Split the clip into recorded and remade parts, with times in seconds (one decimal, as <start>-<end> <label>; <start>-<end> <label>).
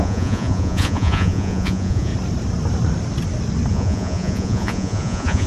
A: 0.0-2.1 remade; 2.1-3.7 recorded; 3.7-5.5 remade